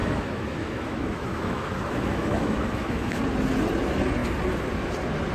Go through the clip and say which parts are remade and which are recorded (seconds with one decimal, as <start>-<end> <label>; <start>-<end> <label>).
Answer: 0.0-3.2 remade; 3.2-5.3 recorded